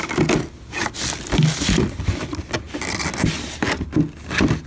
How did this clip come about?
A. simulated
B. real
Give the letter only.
B